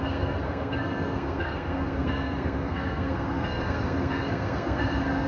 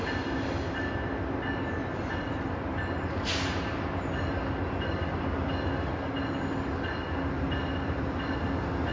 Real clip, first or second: second